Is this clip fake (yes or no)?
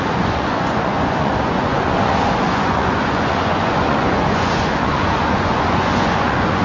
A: yes